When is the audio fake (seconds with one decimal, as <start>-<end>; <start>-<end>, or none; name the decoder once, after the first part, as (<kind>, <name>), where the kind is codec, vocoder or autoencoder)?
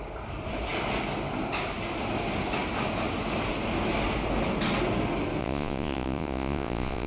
5.4-7.1 (vocoder, Vocos)